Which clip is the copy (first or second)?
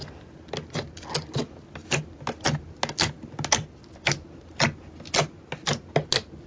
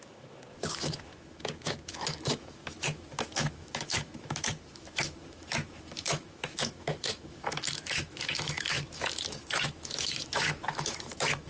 second